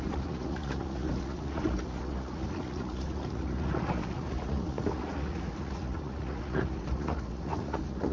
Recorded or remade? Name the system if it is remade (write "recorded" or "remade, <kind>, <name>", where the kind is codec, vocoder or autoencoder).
remade, vocoder, Vocos